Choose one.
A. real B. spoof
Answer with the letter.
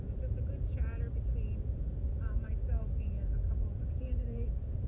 B